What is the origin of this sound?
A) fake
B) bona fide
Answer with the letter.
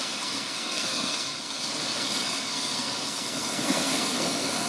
A